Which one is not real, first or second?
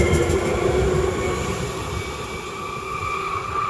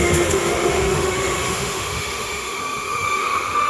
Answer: second